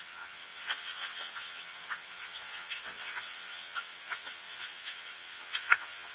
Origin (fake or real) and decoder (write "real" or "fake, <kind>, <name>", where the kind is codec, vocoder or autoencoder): fake, vocoder, WaveNeXt